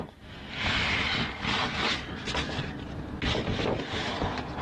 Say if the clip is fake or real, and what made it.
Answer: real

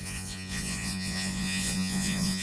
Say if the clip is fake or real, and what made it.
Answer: fake, vocoder, Vocos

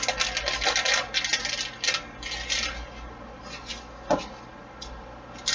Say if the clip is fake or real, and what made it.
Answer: real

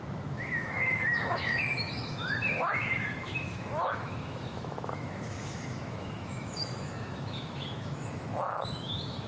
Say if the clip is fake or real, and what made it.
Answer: fake, autoencoder, DAC-VAE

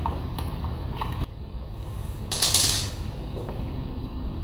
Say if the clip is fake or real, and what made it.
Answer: fake, codec, DAC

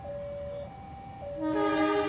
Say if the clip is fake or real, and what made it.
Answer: real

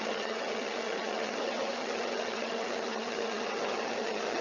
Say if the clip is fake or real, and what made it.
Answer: fake, vocoder, HiFi-GAN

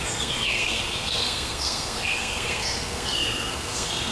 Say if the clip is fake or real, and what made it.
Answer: fake, codec, SNAC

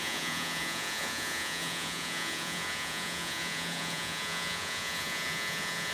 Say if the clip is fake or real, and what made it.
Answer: fake, vocoder, Vocos